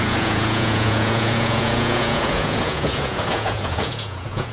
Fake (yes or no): yes